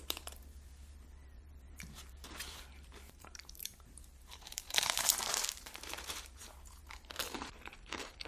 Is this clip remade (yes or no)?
yes